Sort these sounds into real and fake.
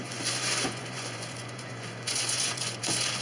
fake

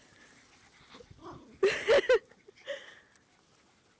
real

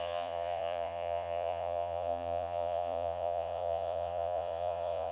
fake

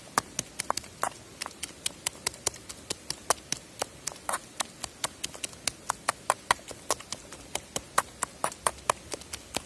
real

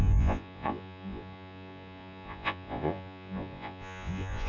fake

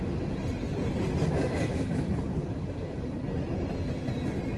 real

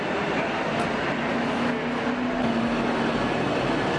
real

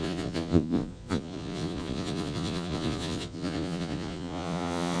fake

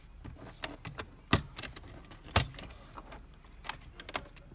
real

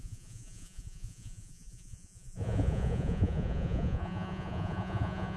fake